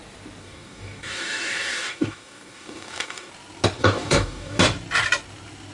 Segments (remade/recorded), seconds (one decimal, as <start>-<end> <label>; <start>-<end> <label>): 0.0-0.4 recorded; 0.4-3.3 remade; 3.3-3.8 recorded; 3.8-4.6 remade; 4.6-5.7 recorded